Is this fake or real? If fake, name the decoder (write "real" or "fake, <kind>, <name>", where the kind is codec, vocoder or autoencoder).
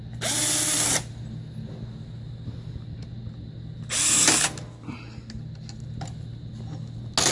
real